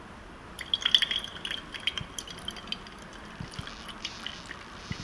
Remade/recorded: recorded